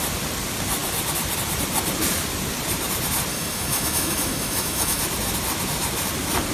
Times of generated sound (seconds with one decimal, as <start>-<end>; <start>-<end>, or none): 3.3-5.0